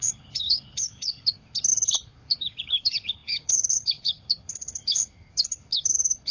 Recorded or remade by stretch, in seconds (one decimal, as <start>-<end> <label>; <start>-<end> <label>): 0.0-6.3 remade